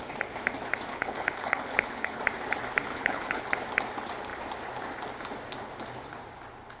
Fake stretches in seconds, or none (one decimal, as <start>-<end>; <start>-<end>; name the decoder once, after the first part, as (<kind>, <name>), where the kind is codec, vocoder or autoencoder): 0.9-2.2 (codec, HILCodec); 2.9-3.4